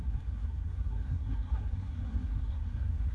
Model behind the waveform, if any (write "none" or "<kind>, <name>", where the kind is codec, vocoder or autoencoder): codec, SNAC